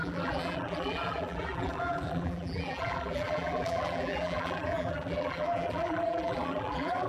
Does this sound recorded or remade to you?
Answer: remade